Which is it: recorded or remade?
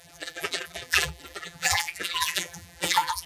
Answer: remade